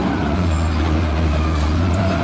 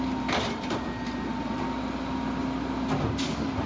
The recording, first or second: second